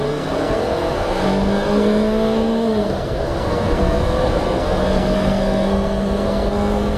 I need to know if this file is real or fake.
fake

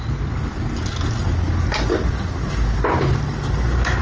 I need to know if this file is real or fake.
real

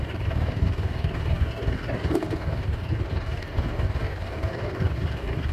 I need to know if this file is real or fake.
fake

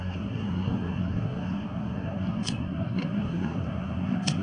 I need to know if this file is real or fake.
fake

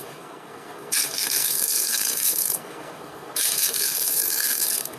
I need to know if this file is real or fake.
fake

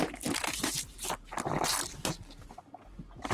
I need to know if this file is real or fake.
real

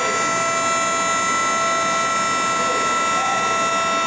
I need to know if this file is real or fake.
real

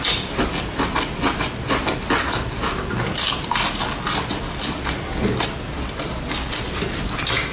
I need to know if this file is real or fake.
real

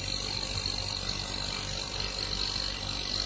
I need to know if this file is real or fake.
real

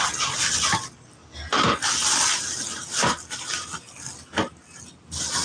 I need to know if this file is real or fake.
real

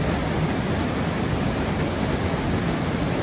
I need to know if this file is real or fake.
real